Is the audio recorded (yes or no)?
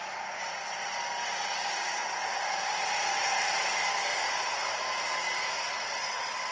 yes